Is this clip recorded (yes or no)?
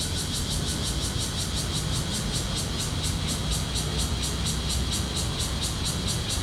yes